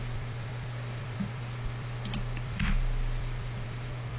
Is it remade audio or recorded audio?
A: remade